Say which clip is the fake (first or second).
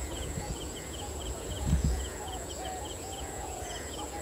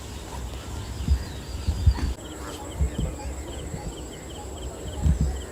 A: first